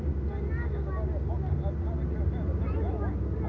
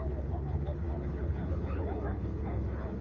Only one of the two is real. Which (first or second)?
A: first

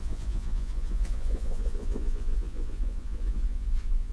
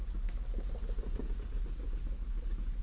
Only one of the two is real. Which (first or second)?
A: second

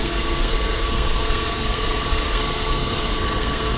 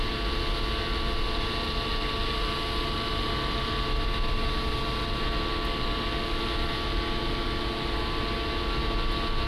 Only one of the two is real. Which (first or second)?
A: second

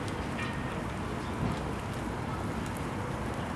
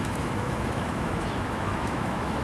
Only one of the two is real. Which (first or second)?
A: first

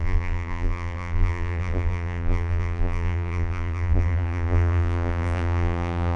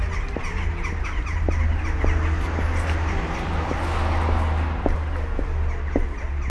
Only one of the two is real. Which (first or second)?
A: second